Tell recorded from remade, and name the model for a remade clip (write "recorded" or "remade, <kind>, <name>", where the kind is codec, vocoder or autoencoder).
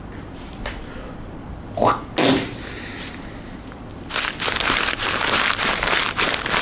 recorded